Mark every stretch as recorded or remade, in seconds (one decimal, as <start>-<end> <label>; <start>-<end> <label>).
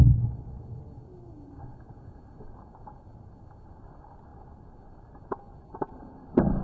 0.0-6.6 recorded